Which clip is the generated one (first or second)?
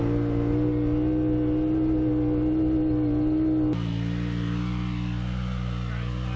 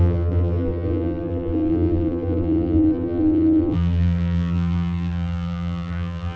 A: second